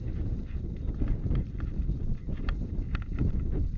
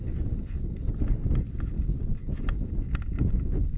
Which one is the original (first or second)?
second